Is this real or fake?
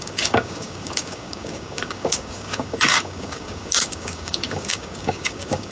fake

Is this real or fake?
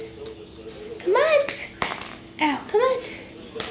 real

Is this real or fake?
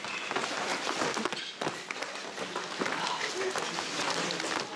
real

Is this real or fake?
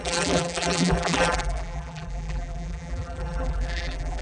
fake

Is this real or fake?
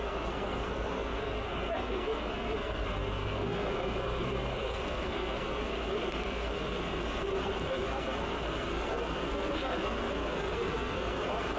fake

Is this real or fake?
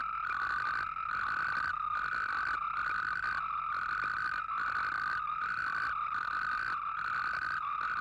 real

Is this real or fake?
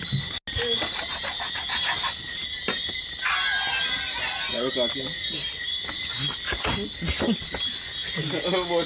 real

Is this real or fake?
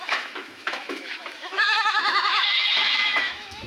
fake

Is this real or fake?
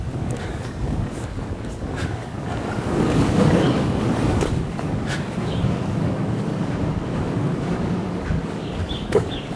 fake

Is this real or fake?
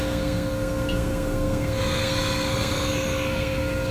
fake